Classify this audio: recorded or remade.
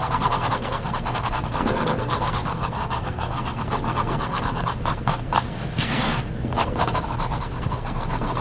remade